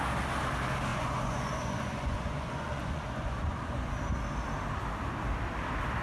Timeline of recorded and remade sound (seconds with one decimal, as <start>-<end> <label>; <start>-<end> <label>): 0.0-0.9 recorded; 0.9-3.9 remade; 3.9-6.0 recorded

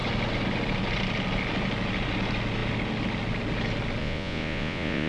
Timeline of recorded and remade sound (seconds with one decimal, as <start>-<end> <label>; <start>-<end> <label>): 0.0-4.0 recorded; 4.0-5.1 remade

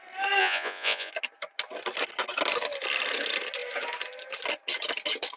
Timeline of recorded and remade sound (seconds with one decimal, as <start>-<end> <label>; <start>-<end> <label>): 0.0-0.4 recorded; 0.4-1.1 remade; 1.1-5.4 recorded